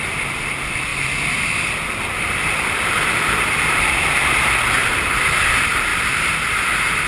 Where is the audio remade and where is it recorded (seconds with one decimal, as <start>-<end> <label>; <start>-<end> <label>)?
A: 0.0-0.9 remade; 0.9-3.7 recorded; 3.7-5.9 remade; 5.9-7.1 recorded